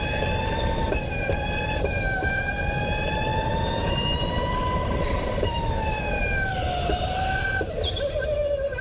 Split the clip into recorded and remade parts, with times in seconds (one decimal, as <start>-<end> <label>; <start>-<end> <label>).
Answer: 0.0-3.3 recorded; 3.3-3.9 remade; 3.9-8.8 recorded

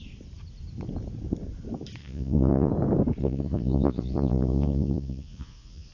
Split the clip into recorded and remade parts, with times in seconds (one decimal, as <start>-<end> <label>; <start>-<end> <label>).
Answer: 0.0-2.0 recorded; 2.0-2.7 remade; 2.7-3.2 recorded; 3.2-5.9 remade

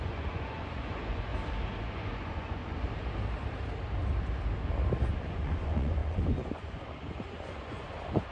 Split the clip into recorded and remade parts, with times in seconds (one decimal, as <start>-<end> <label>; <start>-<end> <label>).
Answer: 0.0-1.3 remade; 1.3-1.8 recorded; 1.8-2.6 remade; 2.6-5.2 recorded; 5.2-8.3 remade

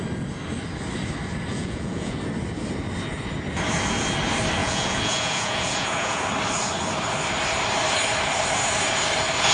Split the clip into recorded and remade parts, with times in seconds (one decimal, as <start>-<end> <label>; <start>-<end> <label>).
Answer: 0.0-1.5 recorded; 1.5-2.2 remade; 2.2-4.6 recorded; 4.6-6.2 remade; 6.2-9.5 recorded

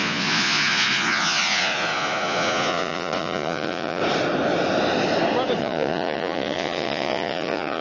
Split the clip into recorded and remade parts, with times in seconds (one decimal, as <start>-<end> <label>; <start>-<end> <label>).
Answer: 0.0-4.0 remade; 4.0-5.6 recorded; 5.6-7.8 remade

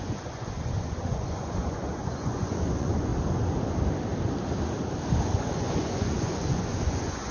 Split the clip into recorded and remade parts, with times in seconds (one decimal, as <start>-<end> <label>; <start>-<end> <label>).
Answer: 0.0-3.1 remade; 3.1-5.3 recorded; 5.3-7.3 remade